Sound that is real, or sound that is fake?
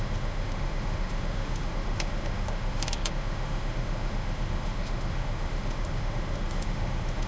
fake